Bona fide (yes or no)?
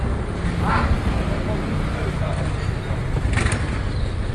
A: yes